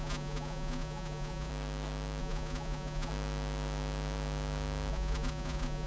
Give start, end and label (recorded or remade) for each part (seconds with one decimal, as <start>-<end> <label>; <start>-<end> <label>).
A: 0.0-1.5 remade; 1.5-2.2 recorded; 2.2-3.1 remade; 3.1-4.9 recorded; 4.9-5.9 remade